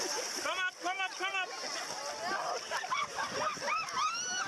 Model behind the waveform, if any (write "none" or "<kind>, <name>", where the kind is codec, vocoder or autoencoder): none